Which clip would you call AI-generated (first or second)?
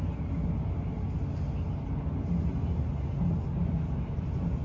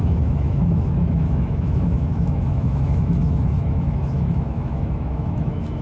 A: second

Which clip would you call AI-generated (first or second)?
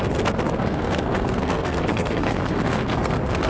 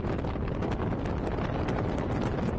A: first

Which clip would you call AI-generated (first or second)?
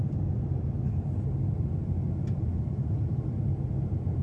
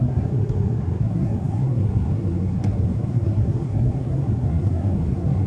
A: second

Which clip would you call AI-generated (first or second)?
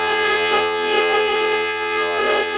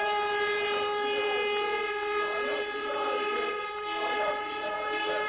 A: first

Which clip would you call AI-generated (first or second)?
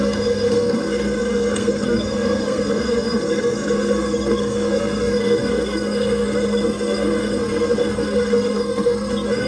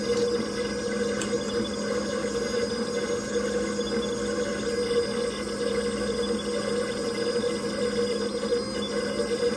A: first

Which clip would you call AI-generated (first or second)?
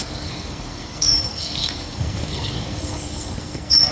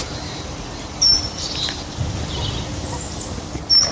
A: first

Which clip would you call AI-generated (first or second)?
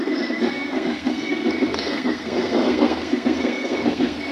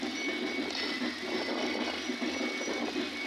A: first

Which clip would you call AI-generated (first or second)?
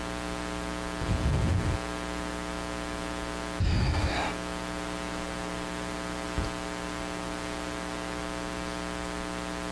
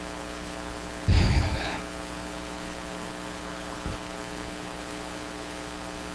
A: second